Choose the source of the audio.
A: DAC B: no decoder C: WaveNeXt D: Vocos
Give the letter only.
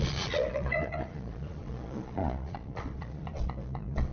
D